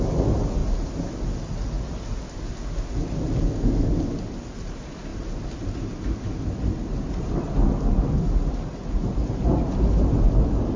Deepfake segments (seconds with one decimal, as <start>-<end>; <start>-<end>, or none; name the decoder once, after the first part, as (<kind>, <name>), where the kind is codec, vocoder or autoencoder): 8.8-9.5 (vocoder, BigVGAN v2)